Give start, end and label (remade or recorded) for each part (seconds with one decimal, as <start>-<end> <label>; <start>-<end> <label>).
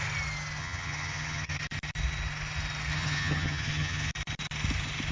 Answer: 0.0-0.6 recorded; 0.6-1.6 remade; 1.6-2.9 recorded; 2.9-4.1 remade; 4.1-5.1 recorded